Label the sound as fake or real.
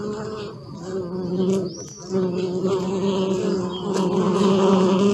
real